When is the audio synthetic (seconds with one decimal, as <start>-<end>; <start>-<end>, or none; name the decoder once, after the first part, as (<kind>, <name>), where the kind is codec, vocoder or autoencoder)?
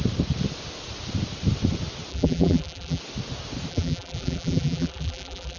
2.1-3.0 (vocoder, BigVGAN v2); 3.7-5.6